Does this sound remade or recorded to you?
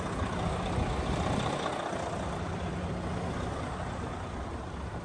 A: recorded